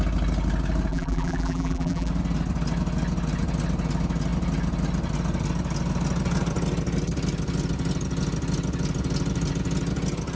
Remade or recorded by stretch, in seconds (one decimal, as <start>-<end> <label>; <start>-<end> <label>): 0.0-0.9 recorded; 0.9-2.1 remade; 2.1-10.4 recorded